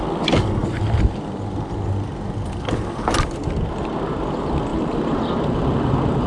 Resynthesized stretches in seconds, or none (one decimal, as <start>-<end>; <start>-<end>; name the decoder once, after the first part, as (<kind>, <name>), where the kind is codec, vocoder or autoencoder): 4.7-5.4 (vocoder, BigVGAN v2)